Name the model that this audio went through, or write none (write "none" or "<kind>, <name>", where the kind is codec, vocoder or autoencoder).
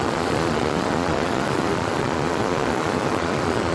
vocoder, Vocos